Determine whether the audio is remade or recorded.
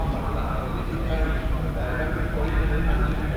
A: recorded